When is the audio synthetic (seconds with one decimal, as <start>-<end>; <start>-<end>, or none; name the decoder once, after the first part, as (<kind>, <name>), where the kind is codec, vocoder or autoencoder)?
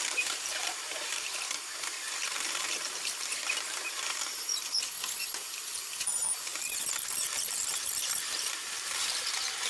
0.0-4.5 (vocoder, BigVGAN v2); 5.2-9.7